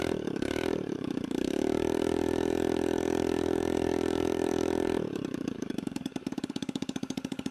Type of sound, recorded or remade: remade